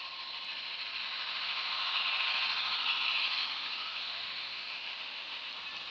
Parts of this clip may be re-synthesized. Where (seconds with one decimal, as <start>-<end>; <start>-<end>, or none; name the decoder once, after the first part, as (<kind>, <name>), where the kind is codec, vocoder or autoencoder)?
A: 1.0-2.0 (autoencoder, DAC-VAE); 3.4-5.5